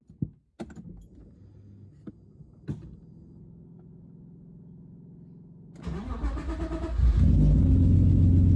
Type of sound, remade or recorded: recorded